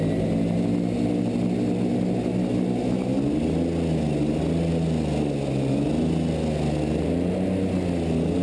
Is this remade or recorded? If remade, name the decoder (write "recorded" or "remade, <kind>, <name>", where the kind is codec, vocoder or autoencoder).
recorded